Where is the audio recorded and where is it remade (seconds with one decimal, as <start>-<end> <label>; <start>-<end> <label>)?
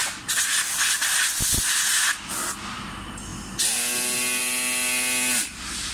0.0-5.9 recorded